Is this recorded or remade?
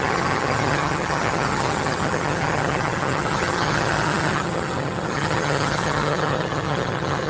remade